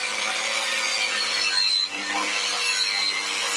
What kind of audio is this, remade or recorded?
recorded